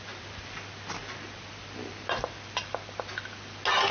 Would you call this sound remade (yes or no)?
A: no